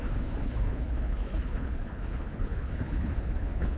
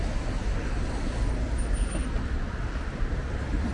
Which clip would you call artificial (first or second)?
first